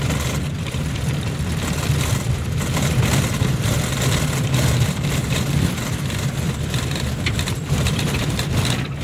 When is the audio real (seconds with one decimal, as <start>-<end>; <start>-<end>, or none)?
5.2-5.9